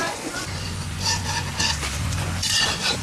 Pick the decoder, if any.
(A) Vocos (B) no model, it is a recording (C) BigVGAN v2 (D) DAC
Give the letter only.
A